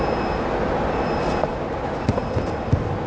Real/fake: real